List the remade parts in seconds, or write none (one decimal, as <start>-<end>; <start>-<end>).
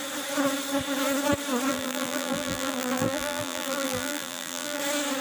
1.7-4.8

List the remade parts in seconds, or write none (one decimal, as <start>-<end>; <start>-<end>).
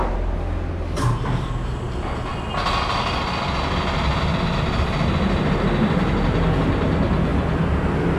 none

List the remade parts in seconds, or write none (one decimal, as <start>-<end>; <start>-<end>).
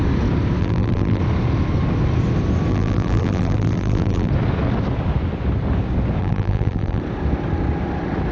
0.6-1.2; 2.7-4.3; 6.2-7.0